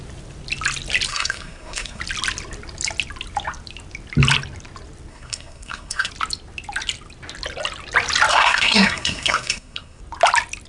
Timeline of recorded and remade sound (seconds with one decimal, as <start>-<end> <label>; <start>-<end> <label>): 0.0-1.1 recorded; 1.1-2.0 remade; 2.0-5.1 recorded; 5.1-6.1 remade; 6.1-8.3 recorded; 8.3-10.0 remade; 10.0-10.7 recorded